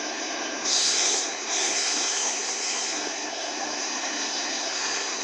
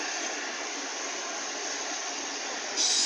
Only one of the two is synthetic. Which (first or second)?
first